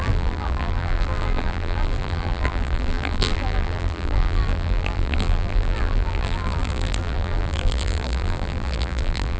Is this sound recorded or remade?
remade